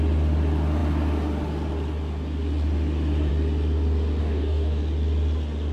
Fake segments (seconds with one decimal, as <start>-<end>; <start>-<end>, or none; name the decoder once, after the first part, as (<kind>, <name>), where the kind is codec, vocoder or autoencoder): 4.2-4.8 (codec, DAC)